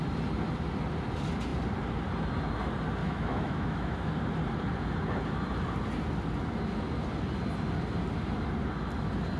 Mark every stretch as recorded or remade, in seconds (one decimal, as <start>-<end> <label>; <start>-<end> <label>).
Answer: 0.0-3.0 recorded; 3.0-4.1 remade; 4.1-9.4 recorded